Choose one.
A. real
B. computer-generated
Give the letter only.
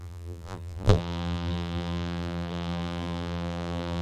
B